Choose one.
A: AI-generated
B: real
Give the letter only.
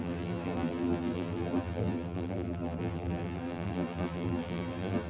A